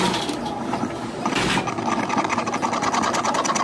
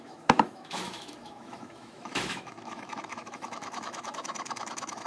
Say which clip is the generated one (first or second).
second